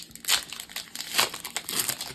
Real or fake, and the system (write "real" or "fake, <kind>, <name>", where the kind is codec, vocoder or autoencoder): real